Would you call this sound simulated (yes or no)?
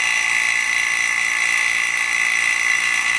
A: no